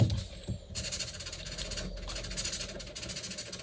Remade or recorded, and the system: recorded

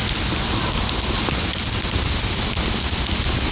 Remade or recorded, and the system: recorded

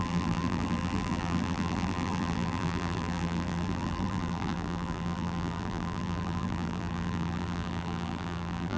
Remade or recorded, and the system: remade, vocoder, BigVGAN v2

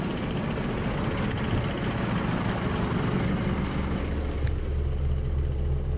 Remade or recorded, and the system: recorded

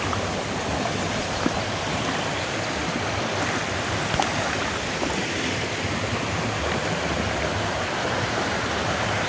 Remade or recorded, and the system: recorded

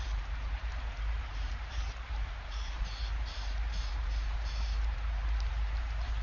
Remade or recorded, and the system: remade, vocoder, BigVGAN v2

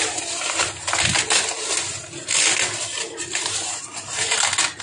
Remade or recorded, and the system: recorded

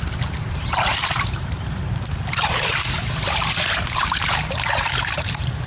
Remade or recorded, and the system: remade, vocoder, BigVGAN v2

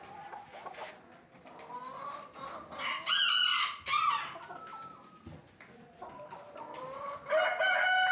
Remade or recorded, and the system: recorded